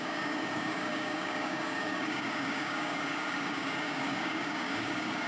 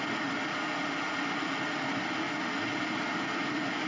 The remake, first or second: first